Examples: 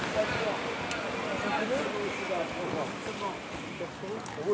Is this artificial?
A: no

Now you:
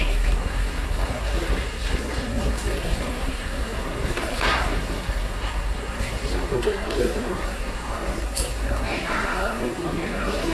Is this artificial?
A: yes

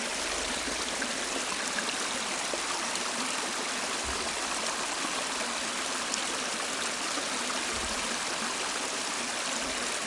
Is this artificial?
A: no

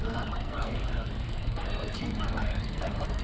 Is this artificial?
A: yes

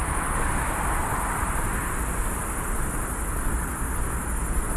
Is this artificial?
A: no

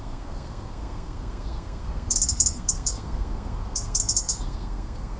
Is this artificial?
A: yes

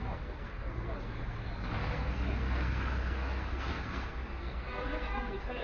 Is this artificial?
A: yes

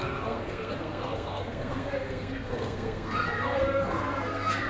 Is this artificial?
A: yes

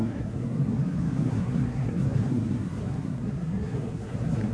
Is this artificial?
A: yes